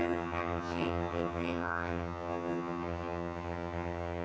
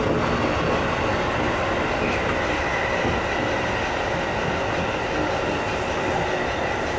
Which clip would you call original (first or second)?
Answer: second